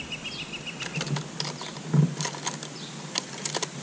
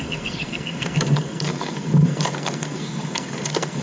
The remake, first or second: second